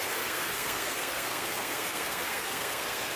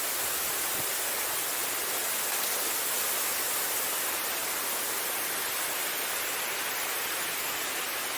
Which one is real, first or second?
second